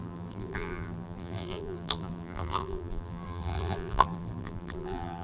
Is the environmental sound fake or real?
fake